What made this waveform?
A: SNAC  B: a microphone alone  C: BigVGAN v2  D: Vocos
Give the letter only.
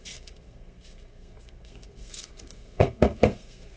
A